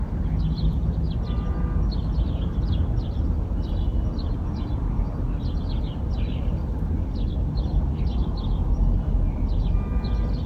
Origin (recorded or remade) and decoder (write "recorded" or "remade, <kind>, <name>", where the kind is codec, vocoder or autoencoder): recorded